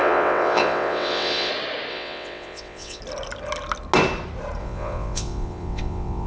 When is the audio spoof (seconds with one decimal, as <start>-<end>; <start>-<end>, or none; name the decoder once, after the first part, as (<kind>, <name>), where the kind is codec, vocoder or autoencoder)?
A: 0.0-1.5 (vocoder, WaveNeXt); 1.9-3.0; 4.6-6.3